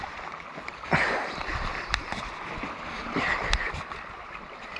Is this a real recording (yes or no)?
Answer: yes